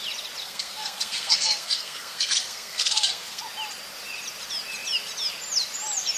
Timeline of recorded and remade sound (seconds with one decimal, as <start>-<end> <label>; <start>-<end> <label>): 0.0-0.4 recorded; 0.4-3.4 remade; 3.4-6.2 recorded